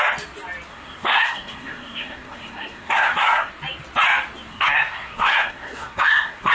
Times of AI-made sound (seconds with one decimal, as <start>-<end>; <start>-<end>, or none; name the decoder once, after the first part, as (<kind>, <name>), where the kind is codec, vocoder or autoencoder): 0.7-3.5 (codec, SNAC); 4.5-6.5